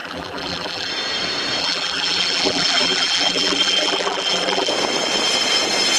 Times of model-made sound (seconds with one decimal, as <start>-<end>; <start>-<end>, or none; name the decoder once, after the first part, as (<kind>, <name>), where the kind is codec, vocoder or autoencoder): 0.0-0.9 (vocoder, BigVGAN v2); 1.6-4.7